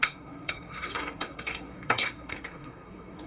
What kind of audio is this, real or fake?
fake